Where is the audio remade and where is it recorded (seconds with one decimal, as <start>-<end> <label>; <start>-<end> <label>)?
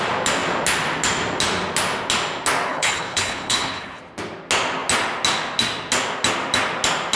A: 0.0-2.7 recorded; 2.7-4.0 remade; 4.0-7.2 recorded